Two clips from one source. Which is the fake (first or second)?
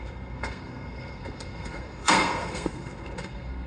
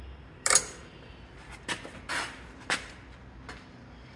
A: first